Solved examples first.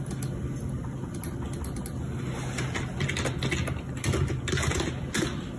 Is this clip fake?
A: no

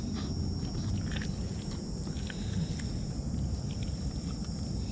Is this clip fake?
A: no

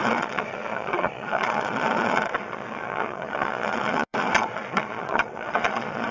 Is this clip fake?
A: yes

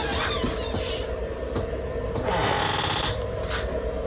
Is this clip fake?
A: no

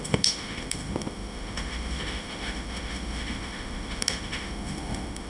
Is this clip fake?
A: yes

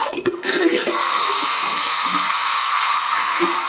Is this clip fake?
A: yes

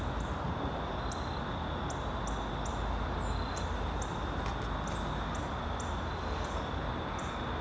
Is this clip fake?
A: no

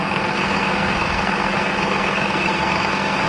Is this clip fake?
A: yes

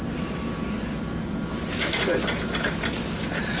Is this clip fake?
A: no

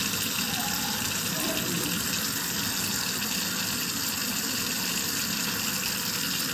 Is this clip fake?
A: no